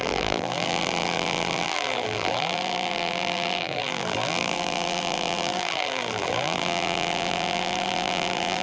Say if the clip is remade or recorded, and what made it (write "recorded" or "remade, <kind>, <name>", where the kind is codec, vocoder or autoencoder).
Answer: remade, vocoder, BigVGAN v2